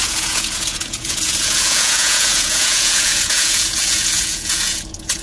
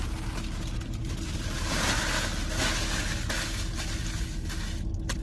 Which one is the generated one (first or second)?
first